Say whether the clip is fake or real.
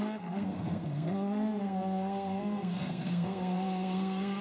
fake